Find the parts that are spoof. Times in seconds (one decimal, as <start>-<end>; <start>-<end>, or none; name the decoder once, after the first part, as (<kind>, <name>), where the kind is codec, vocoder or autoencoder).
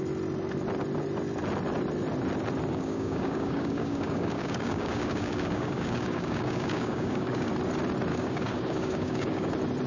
2.7-7.5 (codec, DAC); 8.1-9.5